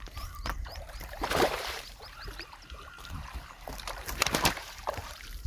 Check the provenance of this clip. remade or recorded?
remade